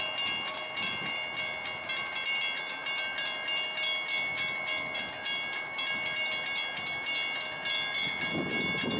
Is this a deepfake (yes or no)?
no